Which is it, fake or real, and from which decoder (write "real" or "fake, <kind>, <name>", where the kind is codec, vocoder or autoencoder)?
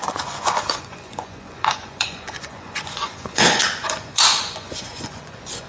fake, vocoder, Vocos